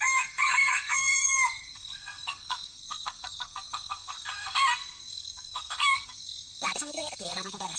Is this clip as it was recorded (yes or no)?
no